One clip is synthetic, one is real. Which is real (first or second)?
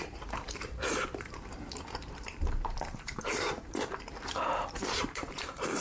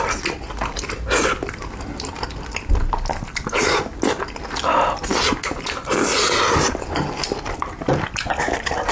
second